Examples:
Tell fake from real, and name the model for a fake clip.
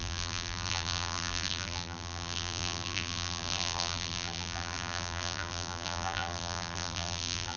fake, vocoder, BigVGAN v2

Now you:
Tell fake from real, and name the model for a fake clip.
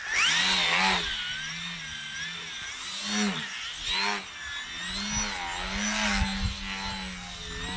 real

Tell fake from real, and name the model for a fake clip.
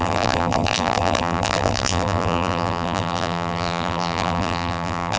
fake, vocoder, BigVGAN v2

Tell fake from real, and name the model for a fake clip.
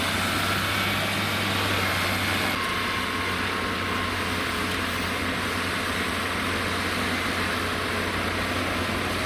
real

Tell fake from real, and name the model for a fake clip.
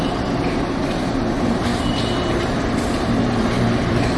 fake, vocoder, BigVGAN v2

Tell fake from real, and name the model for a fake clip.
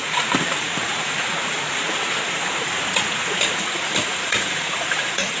fake, vocoder, Vocos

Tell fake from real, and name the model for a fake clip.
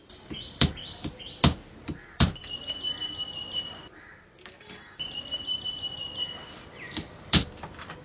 fake, vocoder, BigVGAN v2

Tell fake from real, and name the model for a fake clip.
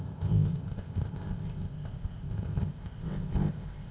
fake, codec, ZipCodec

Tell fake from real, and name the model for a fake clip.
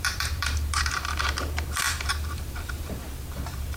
fake, vocoder, BigVGAN v2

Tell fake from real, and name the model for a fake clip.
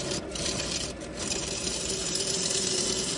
fake, vocoder, BigVGAN v2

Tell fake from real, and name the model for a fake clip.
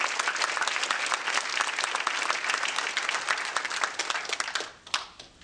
real